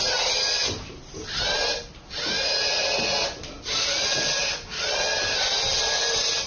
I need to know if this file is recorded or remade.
recorded